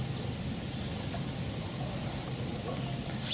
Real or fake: real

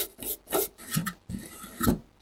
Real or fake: real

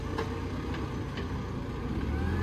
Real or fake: real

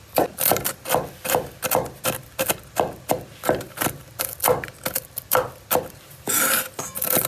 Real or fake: fake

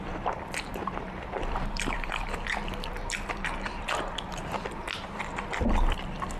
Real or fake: fake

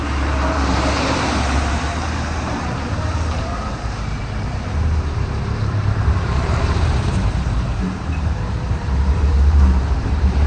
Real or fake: fake